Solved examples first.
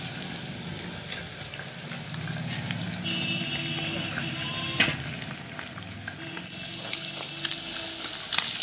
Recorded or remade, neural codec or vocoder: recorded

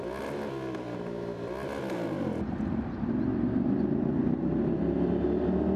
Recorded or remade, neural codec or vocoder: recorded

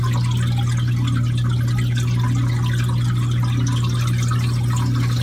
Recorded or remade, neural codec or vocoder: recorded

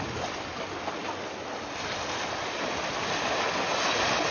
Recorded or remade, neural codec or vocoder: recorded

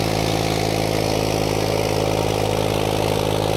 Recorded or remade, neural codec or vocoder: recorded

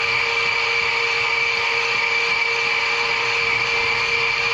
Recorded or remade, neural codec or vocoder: recorded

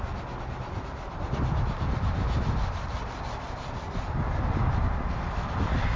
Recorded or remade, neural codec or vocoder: recorded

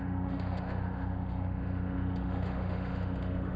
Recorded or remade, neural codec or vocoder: remade, autoencoder, DAC-VAE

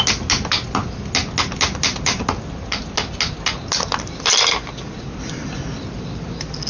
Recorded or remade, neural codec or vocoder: recorded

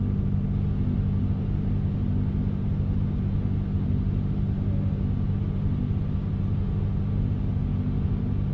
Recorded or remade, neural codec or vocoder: recorded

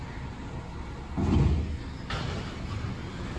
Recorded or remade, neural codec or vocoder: recorded